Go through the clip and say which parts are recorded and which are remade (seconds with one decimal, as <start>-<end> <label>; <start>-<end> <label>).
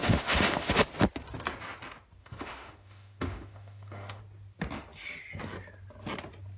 0.0-0.7 remade; 0.7-2.2 recorded; 2.2-4.2 remade; 4.2-6.6 recorded